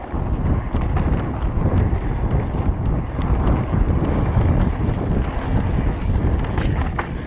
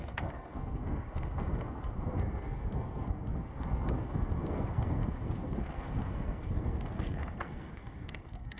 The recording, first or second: first